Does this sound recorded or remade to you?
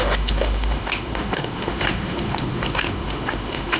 remade